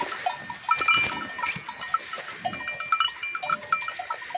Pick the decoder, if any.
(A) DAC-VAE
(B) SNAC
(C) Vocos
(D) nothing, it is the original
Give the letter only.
D